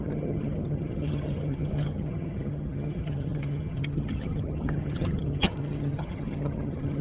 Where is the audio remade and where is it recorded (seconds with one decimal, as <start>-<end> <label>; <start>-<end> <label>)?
0.0-7.0 remade